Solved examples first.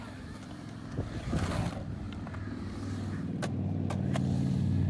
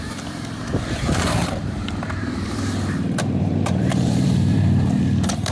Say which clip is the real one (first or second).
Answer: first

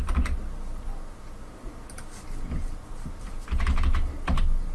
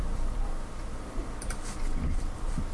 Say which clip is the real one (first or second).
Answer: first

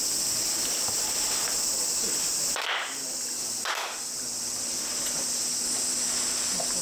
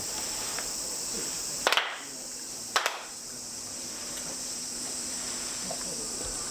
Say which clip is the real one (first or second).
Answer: first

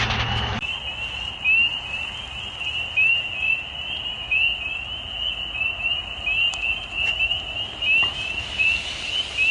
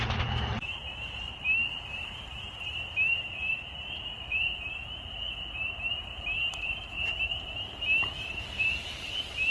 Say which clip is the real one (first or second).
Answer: first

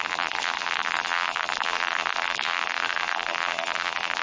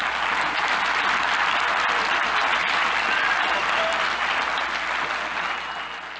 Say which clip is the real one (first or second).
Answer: second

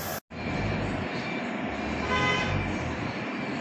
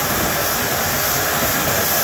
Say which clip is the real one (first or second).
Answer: first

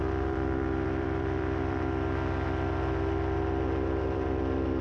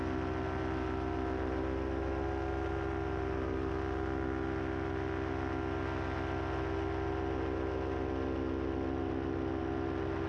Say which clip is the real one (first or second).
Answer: second